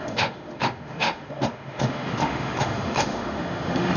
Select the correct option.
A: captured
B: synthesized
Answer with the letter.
B